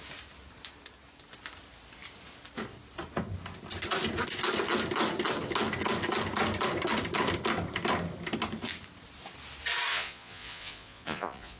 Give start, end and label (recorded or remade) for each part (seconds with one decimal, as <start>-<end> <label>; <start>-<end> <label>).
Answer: 0.0-9.9 recorded; 9.9-11.6 remade